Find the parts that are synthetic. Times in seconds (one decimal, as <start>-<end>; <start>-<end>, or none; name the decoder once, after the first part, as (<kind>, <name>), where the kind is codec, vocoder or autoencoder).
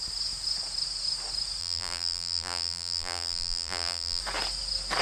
1.6-4.2 (vocoder, BigVGAN v2)